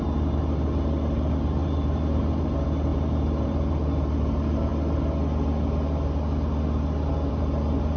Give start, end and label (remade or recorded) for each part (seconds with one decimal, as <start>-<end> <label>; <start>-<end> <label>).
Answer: 0.0-4.7 remade; 4.7-7.3 recorded; 7.3-8.0 remade